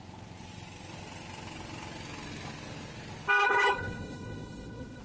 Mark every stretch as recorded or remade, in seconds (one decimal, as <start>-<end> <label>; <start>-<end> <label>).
0.0-3.4 recorded; 3.4-5.0 remade